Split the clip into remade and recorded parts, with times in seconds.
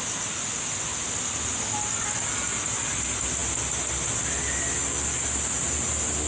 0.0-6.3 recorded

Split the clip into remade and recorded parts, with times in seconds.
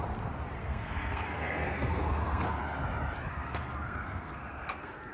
0.0-0.6 recorded; 0.6-2.6 remade; 2.6-3.3 recorded; 3.3-5.1 remade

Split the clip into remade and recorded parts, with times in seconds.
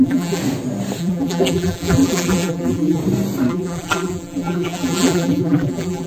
0.0-0.4 remade; 0.4-1.0 recorded; 1.0-3.0 remade; 3.0-3.5 recorded; 3.5-6.1 remade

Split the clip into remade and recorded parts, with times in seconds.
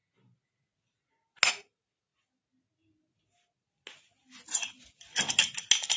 0.0-6.0 recorded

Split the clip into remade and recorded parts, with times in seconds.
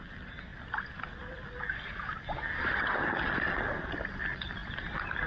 0.0-5.3 recorded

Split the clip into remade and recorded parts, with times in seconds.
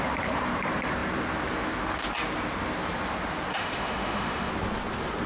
0.0-3.5 recorded; 3.5-4.5 remade; 4.5-5.3 recorded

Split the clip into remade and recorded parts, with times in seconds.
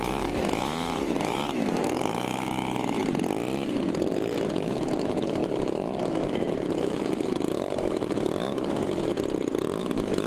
0.0-3.0 remade; 3.0-4.5 recorded; 4.5-9.1 remade; 9.1-9.8 recorded; 9.8-10.3 remade